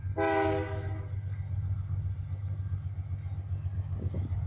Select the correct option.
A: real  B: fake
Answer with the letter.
A